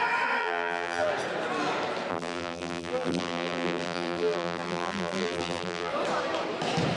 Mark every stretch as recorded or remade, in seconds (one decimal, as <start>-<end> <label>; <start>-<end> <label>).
0.0-0.4 recorded; 0.4-1.1 remade; 1.1-2.1 recorded; 2.1-5.9 remade; 5.9-7.0 recorded

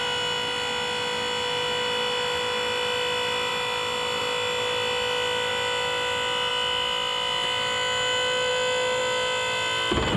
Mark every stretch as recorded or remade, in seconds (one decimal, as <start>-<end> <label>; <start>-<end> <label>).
0.0-10.2 recorded